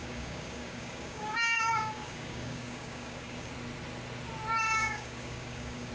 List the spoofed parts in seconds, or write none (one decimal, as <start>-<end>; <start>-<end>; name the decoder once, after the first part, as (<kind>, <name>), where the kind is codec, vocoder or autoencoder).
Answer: 0.0-3.5 (codec, DAC); 4.7-5.9